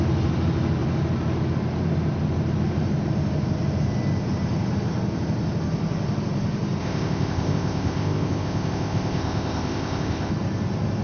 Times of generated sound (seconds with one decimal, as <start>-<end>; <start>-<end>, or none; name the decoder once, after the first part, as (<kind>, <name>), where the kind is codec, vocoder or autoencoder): 6.8-10.3 (codec, ZipCodec)